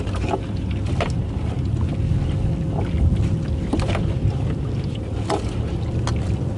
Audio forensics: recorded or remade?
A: recorded